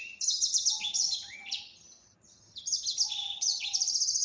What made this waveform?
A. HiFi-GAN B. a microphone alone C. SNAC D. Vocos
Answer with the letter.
A